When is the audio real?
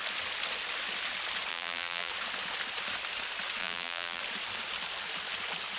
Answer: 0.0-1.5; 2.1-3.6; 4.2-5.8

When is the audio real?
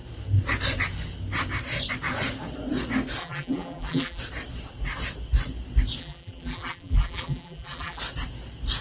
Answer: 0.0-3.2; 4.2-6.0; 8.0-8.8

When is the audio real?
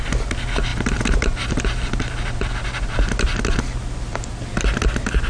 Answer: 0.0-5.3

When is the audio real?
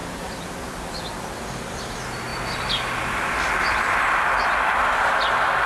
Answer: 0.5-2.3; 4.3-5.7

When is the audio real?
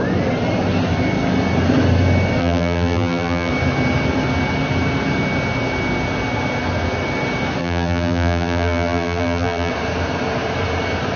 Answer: 0.0-2.4; 3.5-7.6; 9.7-11.2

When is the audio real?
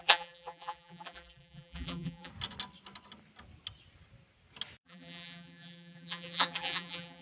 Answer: 2.3-4.8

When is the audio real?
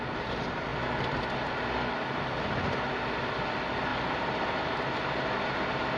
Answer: 0.0-6.0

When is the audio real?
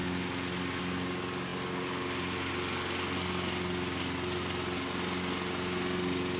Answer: 0.0-6.4